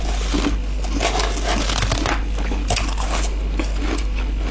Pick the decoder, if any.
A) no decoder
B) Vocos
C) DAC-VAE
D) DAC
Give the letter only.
A